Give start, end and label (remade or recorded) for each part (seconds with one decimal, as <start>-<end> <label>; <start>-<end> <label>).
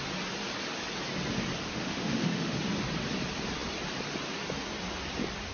0.0-1.6 recorded; 1.6-2.6 remade; 2.6-5.5 recorded